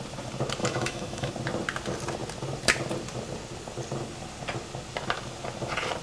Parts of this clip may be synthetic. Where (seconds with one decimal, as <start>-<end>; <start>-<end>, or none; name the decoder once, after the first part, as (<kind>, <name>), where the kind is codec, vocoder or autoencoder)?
0.6-1.3 (autoencoder, DAC-VAE)